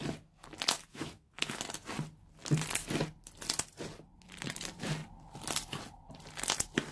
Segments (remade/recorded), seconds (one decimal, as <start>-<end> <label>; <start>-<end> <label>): 0.0-0.9 recorded; 0.9-1.6 remade; 1.6-6.9 recorded